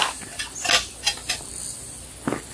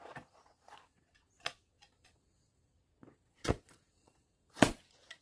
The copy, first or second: second